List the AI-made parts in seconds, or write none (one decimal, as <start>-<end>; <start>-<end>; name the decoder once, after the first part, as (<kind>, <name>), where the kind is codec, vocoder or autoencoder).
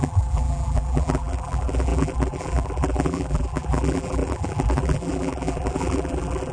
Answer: 0.0-6.5 (vocoder, BigVGAN v2)